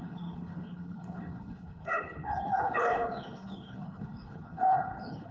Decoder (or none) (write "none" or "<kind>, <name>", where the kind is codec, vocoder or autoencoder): codec, HILCodec